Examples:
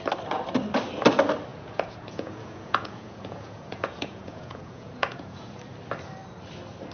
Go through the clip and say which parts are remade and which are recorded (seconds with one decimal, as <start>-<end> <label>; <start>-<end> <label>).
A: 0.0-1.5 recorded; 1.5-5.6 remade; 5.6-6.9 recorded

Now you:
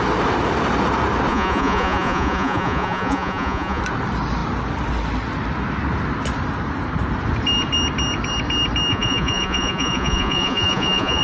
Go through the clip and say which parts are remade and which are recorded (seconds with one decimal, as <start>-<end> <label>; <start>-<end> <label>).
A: 0.0-1.3 recorded; 1.3-3.8 remade; 3.8-8.9 recorded; 8.9-11.2 remade

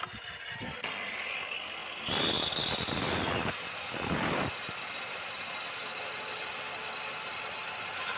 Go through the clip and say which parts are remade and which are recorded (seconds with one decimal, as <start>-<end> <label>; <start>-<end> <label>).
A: 0.0-8.2 recorded

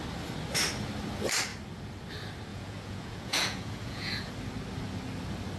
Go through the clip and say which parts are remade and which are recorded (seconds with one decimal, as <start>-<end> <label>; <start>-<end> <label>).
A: 0.0-2.5 recorded; 2.5-4.3 remade; 4.3-5.6 recorded

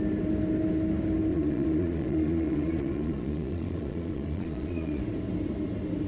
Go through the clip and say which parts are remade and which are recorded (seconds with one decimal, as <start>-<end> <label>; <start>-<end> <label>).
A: 0.0-1.3 recorded; 1.3-5.0 remade; 5.0-6.1 recorded

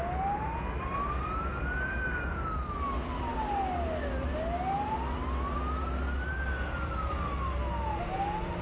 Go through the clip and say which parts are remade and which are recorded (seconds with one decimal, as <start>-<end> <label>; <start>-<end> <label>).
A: 0.0-8.6 recorded